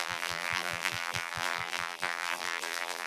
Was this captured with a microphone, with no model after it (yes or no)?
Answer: no